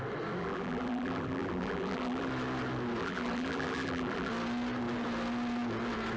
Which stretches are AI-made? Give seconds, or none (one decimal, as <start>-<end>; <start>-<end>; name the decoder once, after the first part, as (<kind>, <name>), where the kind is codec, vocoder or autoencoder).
0.4-2.3 (vocoder, BigVGAN v2); 3.0-4.3